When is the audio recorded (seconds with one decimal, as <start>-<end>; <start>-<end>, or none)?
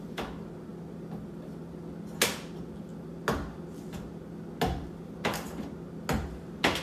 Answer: 0.0-6.8